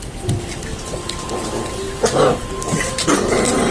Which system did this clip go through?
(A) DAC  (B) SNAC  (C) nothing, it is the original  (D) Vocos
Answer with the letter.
C